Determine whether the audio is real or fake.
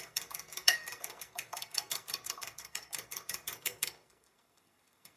fake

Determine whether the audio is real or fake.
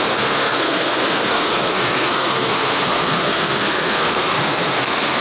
fake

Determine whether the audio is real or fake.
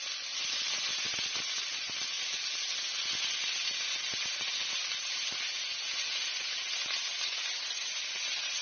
real